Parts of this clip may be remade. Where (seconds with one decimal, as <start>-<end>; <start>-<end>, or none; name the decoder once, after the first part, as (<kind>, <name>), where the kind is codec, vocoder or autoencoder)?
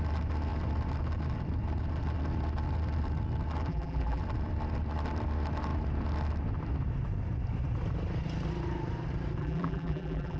3.7-4.2 (vocoder, BigVGAN v2); 9.4-10.4